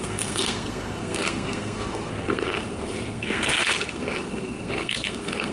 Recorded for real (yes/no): no